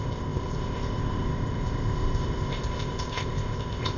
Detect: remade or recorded remade